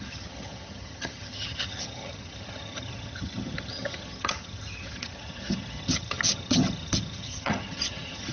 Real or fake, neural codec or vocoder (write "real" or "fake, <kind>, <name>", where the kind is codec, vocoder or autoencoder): fake, vocoder, HiFi-GAN